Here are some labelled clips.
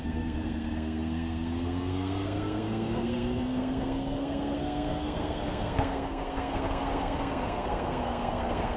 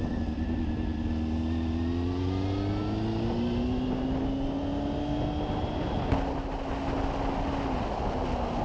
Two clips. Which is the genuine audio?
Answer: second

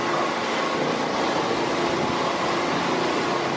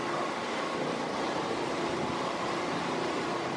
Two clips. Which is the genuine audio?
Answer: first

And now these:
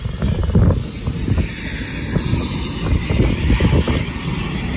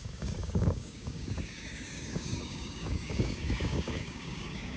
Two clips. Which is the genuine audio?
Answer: first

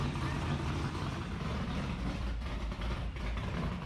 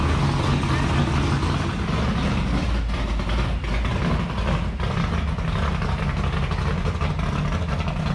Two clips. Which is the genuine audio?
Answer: second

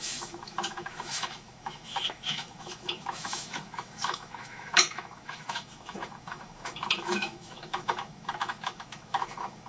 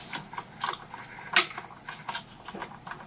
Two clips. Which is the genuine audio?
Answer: second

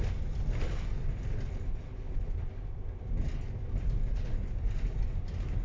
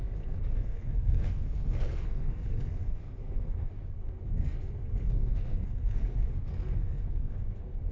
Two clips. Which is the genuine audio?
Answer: first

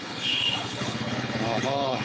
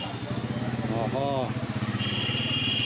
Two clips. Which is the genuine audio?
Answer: second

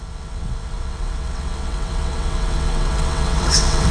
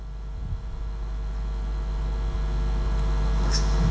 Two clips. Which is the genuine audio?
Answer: second